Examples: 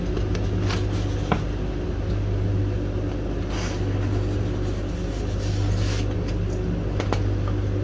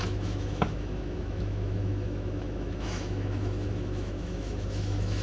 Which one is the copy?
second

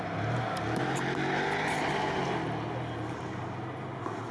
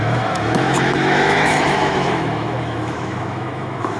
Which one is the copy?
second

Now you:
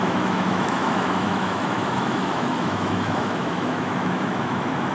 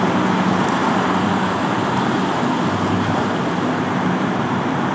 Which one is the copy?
first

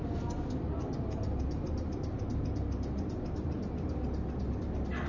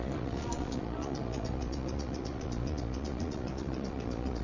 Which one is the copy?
second